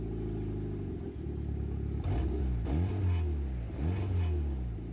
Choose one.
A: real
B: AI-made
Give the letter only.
A